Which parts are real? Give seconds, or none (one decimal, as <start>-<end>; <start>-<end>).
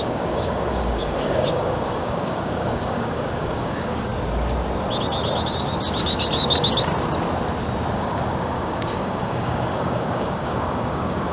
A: 4.1-7.9